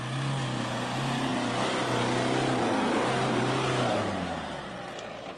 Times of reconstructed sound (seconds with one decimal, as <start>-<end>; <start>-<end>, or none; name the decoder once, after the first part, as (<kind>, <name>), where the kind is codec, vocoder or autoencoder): none